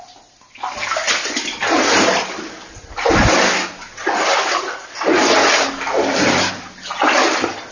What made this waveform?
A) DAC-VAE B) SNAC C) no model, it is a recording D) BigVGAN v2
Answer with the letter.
C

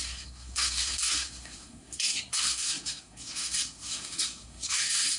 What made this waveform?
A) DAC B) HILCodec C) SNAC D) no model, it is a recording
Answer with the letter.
C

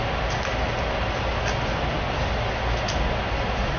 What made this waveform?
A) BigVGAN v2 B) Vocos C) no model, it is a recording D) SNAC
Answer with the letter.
C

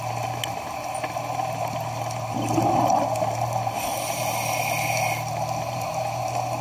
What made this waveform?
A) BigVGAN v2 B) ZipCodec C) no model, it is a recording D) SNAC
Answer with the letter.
C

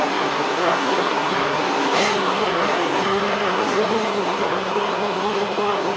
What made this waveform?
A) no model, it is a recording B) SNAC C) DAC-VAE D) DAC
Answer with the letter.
B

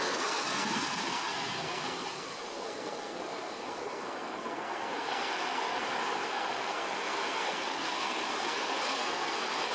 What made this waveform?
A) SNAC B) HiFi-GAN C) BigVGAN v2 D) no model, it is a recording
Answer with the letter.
A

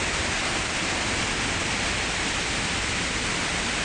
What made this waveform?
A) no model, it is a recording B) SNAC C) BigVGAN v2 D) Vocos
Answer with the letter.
A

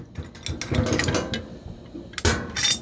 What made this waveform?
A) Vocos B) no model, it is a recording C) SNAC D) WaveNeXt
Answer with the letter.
B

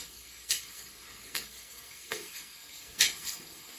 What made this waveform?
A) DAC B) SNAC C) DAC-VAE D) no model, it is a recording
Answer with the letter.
B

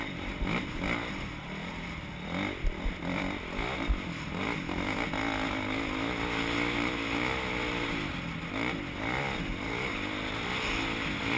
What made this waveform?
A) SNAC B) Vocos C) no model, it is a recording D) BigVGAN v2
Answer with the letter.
C